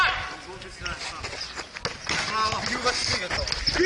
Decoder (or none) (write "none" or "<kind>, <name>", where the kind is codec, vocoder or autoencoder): none